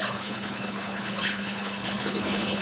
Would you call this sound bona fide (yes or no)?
no